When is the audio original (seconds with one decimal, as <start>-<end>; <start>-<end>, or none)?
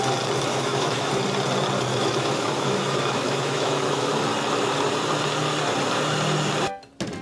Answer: 0.0-0.5; 1.1-1.9; 4.1-7.2